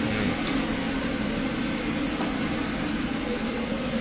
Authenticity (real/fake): real